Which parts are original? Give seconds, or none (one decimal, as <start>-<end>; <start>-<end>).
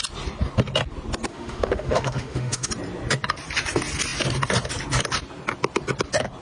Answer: 0.0-1.3; 2.7-6.4